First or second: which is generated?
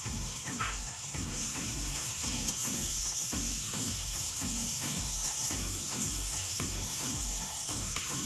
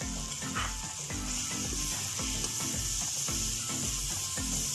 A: first